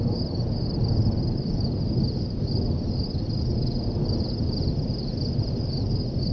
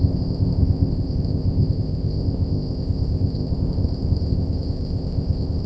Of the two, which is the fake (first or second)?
second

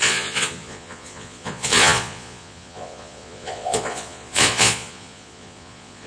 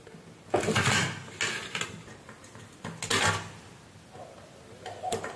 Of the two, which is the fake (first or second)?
first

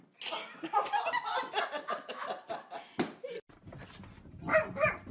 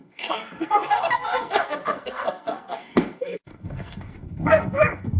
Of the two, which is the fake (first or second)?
second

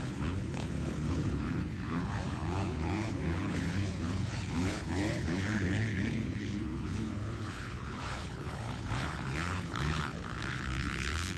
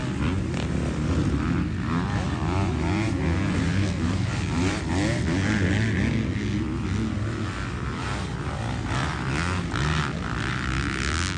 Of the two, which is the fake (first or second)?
first